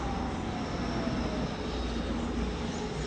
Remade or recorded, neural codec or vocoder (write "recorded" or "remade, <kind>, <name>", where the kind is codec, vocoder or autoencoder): recorded